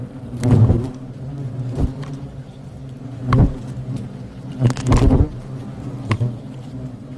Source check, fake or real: fake